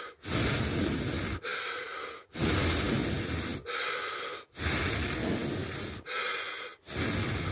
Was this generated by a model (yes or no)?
no